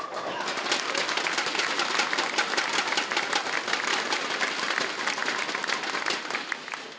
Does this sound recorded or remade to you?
recorded